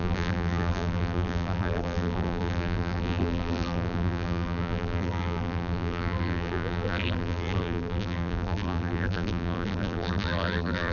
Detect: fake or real fake